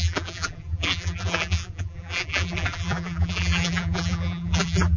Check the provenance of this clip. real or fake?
fake